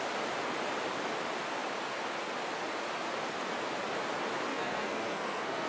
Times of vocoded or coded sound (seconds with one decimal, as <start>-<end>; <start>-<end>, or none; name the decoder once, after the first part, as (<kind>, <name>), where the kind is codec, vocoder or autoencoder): 4.5-5.7 (codec, SNAC)